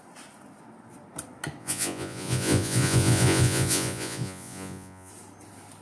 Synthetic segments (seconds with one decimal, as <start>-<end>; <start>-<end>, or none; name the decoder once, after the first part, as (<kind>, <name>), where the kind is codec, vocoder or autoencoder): 1.6-5.1 (vocoder, Vocos)